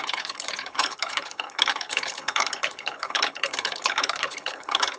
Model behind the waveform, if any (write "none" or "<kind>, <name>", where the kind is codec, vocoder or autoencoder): codec, HILCodec